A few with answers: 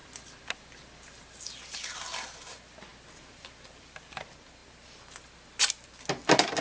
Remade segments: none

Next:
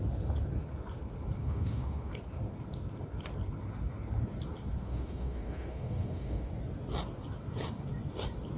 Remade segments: 1.4-2.1 (autoencoder, DAC-VAE); 4.8-6.5

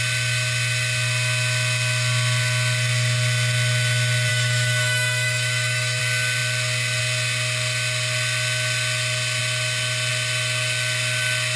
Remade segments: 4.3-6.0 (autoencoder, DAC-VAE)

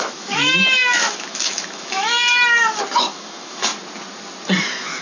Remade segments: 0.0-2.4 (autoencoder, DAC-VAE); 3.0-3.7; 4.6-5.0

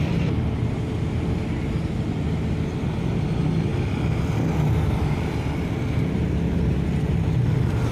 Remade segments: none

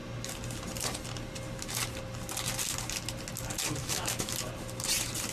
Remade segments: 3.8-4.3 (autoencoder, DAC-VAE)